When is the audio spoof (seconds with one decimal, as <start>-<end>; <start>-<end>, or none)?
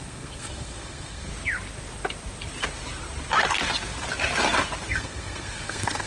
0.0-1.3; 4.9-6.1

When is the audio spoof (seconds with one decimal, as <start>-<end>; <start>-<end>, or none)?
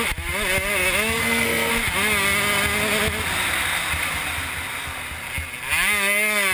1.2-1.7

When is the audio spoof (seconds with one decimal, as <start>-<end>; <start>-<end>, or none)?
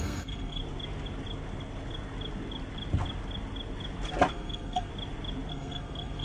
0.0-0.6; 4.3-4.9; 5.5-6.2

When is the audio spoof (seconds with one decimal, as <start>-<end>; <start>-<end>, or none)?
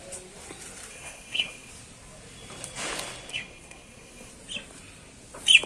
0.9-1.7; 3.3-4.3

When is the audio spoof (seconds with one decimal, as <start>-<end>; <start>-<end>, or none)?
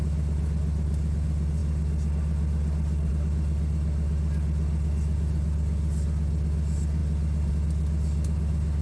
none